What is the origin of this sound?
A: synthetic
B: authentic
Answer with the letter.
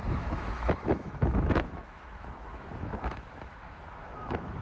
A